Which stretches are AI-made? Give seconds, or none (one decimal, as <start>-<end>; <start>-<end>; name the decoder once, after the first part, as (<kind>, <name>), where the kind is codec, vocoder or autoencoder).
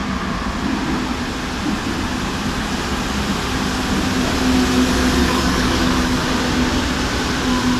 5.2-6.2 (codec, DAC)